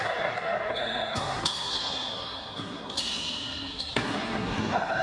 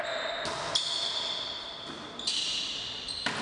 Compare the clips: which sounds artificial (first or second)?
first